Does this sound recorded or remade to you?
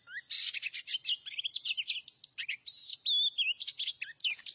recorded